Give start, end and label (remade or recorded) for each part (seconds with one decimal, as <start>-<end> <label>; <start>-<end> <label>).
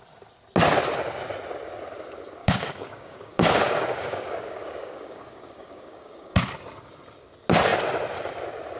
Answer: 0.0-2.4 recorded; 2.4-6.5 remade; 6.5-8.8 recorded